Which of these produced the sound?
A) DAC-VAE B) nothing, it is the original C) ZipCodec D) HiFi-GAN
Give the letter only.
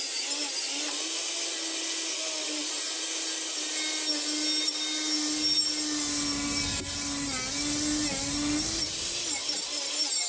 B